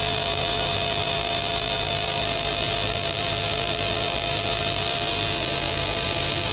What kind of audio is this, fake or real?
fake